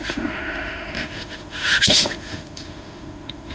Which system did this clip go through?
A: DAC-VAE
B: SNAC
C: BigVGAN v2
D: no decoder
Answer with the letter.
A